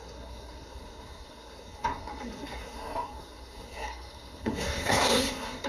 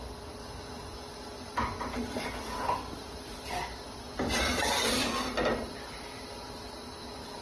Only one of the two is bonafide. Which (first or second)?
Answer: second